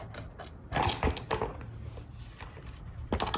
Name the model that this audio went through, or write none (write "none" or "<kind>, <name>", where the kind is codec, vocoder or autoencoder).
none